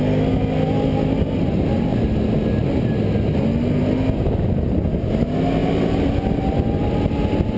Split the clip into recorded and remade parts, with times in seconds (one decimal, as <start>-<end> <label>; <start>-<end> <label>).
0.0-7.6 recorded